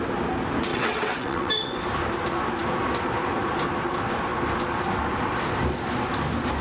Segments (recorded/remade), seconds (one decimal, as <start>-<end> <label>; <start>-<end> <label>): 0.0-0.7 recorded; 0.7-1.5 remade; 1.5-6.6 recorded